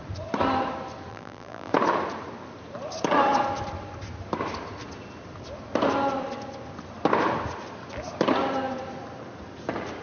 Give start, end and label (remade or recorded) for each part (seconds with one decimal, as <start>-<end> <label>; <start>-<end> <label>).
0.0-1.1 recorded; 1.1-1.7 remade; 1.7-10.0 recorded